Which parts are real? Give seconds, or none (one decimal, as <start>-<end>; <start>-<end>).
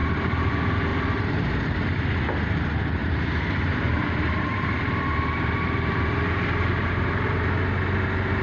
0.5-0.9; 1.4-3.0; 7.6-8.4